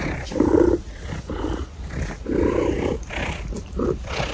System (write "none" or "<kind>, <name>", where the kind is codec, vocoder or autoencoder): none